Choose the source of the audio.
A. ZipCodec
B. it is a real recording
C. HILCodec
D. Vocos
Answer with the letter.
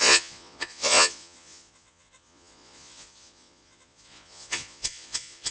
D